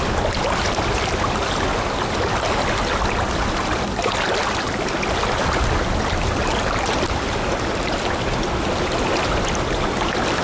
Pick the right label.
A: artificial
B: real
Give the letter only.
B